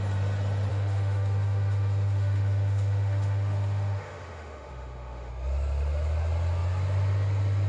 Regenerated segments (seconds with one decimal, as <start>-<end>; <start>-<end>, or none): 0.7-5.3